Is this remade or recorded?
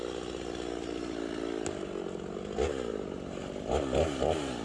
recorded